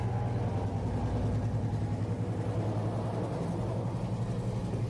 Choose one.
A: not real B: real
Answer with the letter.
B